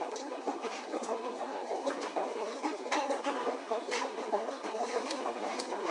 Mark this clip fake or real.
fake